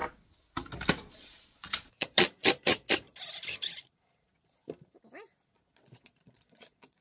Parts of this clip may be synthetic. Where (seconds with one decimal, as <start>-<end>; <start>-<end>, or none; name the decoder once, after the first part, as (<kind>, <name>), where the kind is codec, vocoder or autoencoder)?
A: 1.1-2.4 (vocoder, Vocos); 3.9-4.6; 5.5-7.0

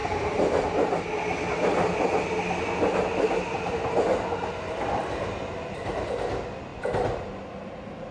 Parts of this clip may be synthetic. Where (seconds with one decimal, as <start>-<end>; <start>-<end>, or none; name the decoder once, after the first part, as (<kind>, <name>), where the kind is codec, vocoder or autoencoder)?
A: none

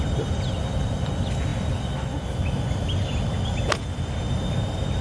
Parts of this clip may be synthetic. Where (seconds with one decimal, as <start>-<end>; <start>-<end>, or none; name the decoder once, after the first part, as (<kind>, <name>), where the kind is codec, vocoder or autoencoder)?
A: none

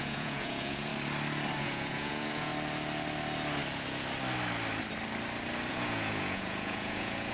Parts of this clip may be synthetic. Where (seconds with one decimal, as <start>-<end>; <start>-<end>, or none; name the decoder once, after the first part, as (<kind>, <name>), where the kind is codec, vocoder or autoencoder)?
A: 0.0-0.9 (vocoder, Vocos); 1.6-2.5; 5.7-7.3

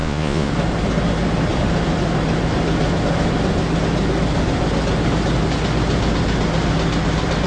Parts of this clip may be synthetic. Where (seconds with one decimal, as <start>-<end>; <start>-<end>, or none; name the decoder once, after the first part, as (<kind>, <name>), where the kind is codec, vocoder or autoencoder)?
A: 0.0-0.5 (vocoder, Vocos)

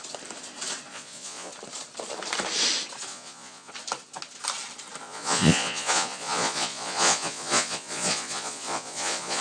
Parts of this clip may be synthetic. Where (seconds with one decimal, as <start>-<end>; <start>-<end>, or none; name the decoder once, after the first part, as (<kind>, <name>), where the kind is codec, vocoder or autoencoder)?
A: 0.9-1.5 (vocoder, Vocos); 3.1-3.7; 5.0-9.4